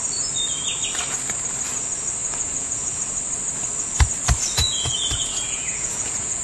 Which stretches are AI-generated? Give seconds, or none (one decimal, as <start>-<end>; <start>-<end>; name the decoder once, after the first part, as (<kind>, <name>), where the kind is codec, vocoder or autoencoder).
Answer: 2.2-3.0 (vocoder, Vocos); 4.6-6.4